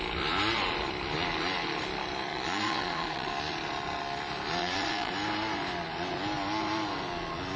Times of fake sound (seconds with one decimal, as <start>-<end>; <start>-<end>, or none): 2.3-3.3; 4.6-5.1